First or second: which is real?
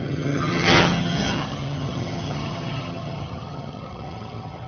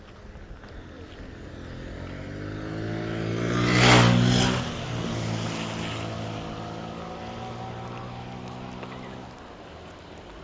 second